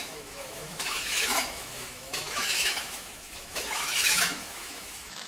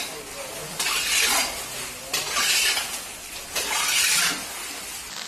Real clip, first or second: second